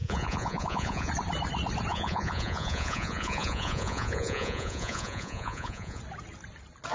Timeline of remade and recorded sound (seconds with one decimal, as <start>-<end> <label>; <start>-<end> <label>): 0.0-1.1 remade; 1.1-1.9 recorded; 1.9-6.0 remade; 6.0-6.9 recorded